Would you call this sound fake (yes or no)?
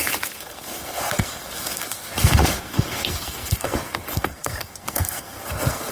yes